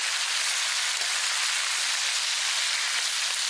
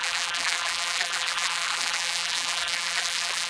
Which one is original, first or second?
first